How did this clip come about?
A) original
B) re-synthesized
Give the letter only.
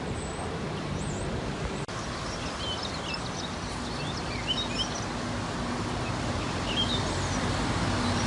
A